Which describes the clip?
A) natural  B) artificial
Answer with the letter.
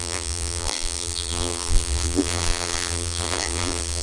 B